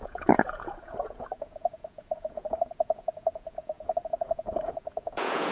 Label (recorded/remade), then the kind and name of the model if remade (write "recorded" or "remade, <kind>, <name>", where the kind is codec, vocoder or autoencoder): remade, vocoder, Vocos